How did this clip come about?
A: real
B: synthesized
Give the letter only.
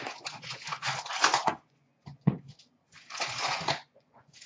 B